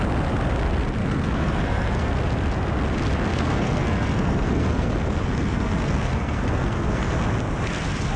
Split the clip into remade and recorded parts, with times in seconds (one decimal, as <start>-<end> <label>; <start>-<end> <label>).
0.0-1.0 recorded; 1.0-2.1 remade; 2.1-3.3 recorded; 3.3-7.2 remade; 7.2-8.2 recorded